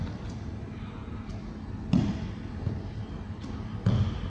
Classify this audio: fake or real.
real